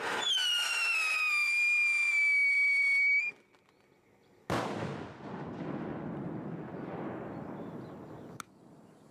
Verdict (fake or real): real